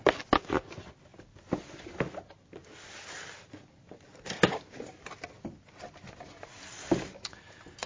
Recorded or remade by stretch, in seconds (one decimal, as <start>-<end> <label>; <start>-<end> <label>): 0.0-7.9 recorded